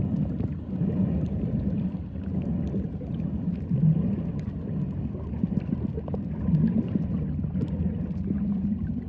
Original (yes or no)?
yes